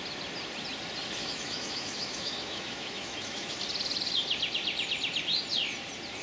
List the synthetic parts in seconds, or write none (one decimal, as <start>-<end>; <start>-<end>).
1.2-3.6